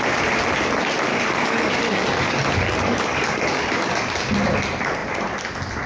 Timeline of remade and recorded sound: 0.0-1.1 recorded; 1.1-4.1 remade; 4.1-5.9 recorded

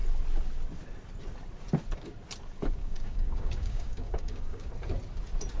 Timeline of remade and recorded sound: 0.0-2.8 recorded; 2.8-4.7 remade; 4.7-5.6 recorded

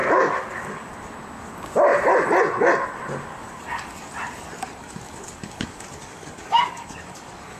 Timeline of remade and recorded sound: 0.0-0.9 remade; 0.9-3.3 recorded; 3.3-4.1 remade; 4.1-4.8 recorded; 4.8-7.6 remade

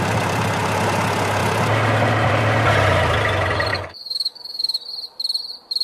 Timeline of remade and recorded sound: 0.0-3.7 recorded; 3.7-4.8 remade; 4.8-5.8 recorded

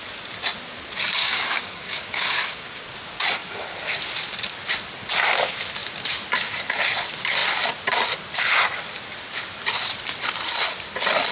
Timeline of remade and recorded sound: 0.0-1.2 recorded; 1.2-2.9 remade; 2.9-11.3 recorded

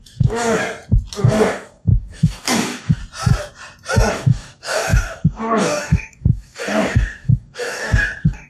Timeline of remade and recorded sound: 0.0-0.6 remade; 0.6-1.2 recorded; 1.2-3.0 remade; 3.0-4.1 recorded; 4.1-8.5 remade

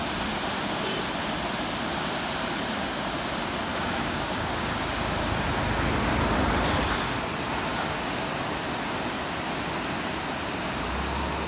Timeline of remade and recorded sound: 0.0-3.7 recorded; 3.7-4.8 remade; 4.8-7.7 recorded; 7.7-8.3 remade; 8.3-11.5 recorded

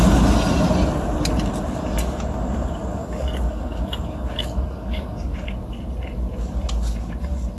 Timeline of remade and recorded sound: 0.0-3.0 recorded; 3.0-5.5 remade; 5.5-7.6 recorded